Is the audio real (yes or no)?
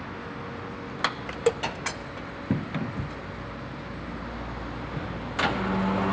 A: yes